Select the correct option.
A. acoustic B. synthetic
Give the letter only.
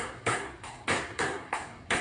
B